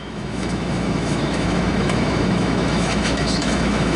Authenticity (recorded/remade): remade